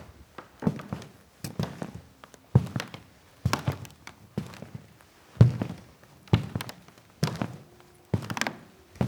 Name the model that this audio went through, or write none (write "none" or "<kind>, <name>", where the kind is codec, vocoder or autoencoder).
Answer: none